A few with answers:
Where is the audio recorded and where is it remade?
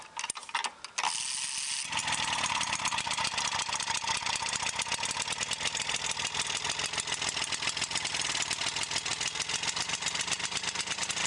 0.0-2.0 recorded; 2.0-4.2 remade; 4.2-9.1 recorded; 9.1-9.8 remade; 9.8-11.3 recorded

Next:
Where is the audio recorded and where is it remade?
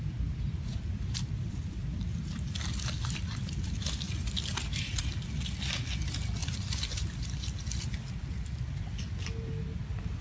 0.0-0.7 recorded; 0.7-2.4 remade; 2.4-6.4 recorded; 6.4-7.4 remade; 7.4-10.2 recorded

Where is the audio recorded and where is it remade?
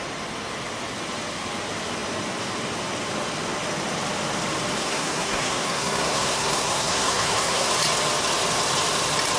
0.0-4.8 recorded; 4.8-7.7 remade; 7.7-9.4 recorded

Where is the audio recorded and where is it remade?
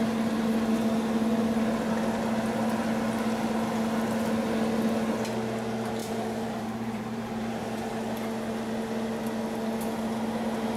0.0-6.0 recorded; 6.0-7.9 remade; 7.9-10.8 recorded